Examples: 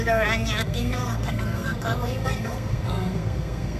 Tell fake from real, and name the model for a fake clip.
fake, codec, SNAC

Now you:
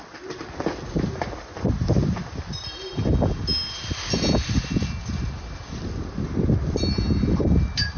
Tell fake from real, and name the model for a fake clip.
real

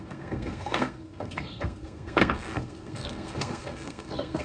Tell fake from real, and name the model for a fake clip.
fake, codec, SNAC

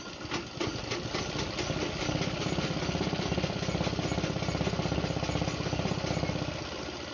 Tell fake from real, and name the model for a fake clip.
real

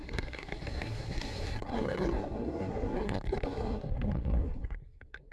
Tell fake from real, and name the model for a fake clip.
fake, codec, SNAC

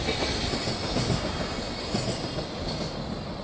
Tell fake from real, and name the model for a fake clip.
real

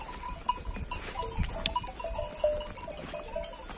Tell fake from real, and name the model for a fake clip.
real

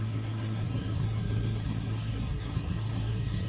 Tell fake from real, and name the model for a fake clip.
fake, codec, SNAC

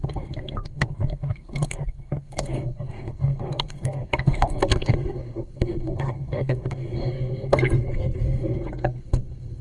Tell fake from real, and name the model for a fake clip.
fake, codec, SNAC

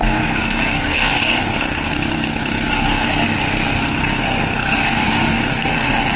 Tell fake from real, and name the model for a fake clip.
fake, codec, SNAC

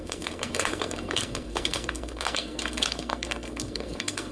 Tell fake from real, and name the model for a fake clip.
fake, codec, SNAC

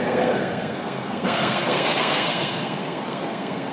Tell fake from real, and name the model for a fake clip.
fake, codec, SNAC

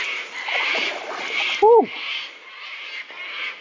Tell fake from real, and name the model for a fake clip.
real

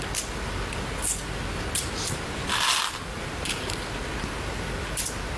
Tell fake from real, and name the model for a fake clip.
real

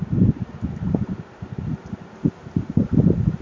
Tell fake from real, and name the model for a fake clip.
real